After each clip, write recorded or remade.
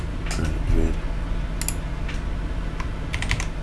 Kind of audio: recorded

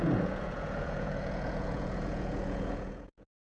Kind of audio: remade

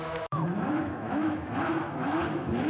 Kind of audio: remade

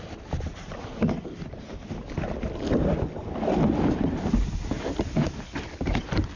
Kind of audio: recorded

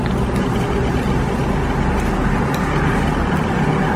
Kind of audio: recorded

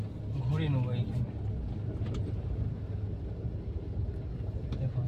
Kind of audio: recorded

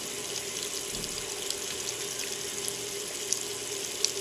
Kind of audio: recorded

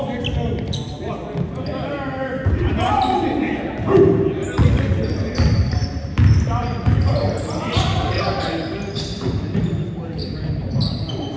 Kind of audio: recorded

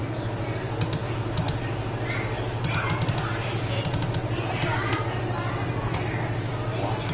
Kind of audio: recorded